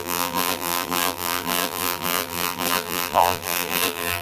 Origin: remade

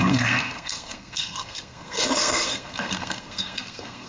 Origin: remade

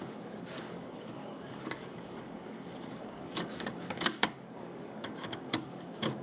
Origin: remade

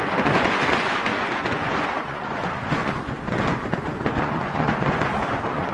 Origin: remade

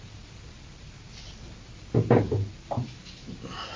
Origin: recorded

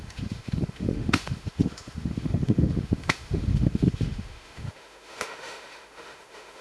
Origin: remade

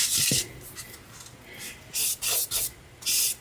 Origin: recorded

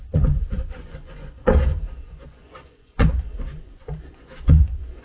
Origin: remade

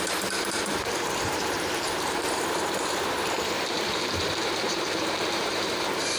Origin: remade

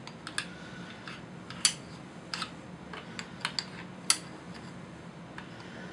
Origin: recorded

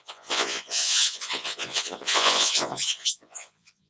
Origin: remade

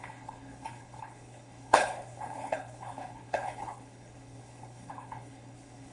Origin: remade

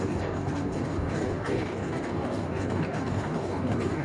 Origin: remade